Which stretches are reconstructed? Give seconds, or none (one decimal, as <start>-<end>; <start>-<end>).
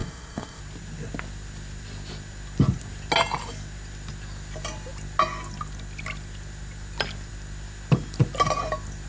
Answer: 0.0-0.6